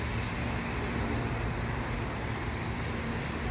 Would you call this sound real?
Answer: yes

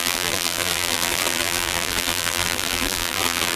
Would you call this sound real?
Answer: no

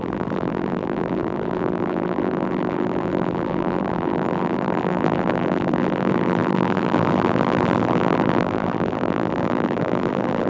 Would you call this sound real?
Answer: no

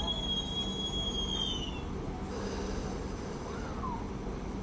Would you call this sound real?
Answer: yes